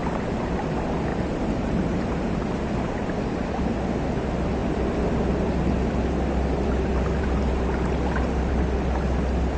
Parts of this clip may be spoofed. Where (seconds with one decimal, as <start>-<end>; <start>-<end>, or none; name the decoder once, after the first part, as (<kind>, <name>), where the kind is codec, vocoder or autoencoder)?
1.1-2.4 (vocoder, BigVGAN v2)